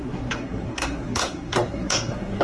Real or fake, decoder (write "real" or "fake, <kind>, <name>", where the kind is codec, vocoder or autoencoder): fake, codec, SNAC